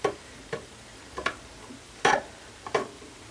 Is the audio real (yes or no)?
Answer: yes